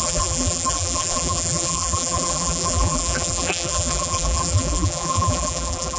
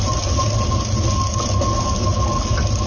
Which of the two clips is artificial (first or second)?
first